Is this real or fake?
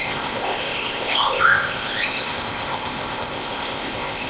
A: fake